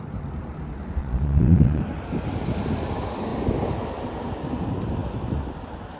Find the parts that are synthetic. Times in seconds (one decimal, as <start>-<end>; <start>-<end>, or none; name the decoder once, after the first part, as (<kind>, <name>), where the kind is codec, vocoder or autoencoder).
1.0-1.8 (vocoder, Vocos)